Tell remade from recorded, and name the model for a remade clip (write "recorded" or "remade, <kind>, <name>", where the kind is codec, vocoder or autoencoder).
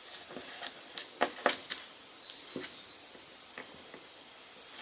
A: recorded